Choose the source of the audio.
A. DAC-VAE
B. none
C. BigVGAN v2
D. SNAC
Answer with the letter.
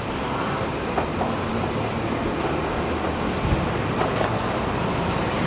B